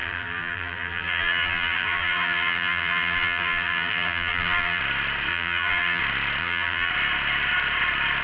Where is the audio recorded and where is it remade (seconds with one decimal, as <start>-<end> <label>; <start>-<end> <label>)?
0.0-4.8 remade; 4.8-5.3 recorded; 5.3-6.0 remade; 6.0-6.4 recorded; 6.4-6.9 remade; 6.9-8.2 recorded